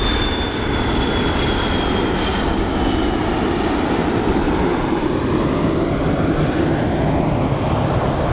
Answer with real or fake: real